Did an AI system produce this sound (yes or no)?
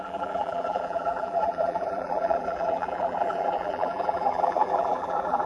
yes